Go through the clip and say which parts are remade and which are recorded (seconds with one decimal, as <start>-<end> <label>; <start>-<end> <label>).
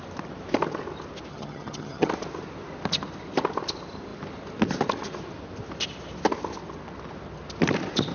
0.0-1.3 recorded; 1.3-2.1 remade; 2.1-8.1 recorded